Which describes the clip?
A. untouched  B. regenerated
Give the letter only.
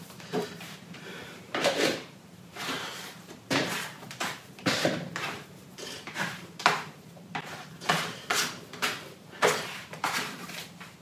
B